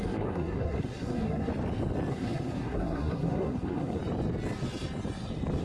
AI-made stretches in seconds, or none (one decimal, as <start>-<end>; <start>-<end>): 0.0-1.5; 2.1-4.0